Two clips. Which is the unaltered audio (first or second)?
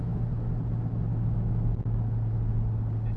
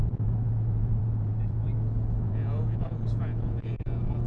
first